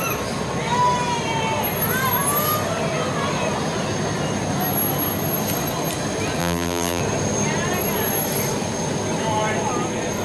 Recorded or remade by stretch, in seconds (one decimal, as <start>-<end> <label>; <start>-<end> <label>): 0.0-6.4 recorded; 6.4-7.0 remade; 7.0-10.2 recorded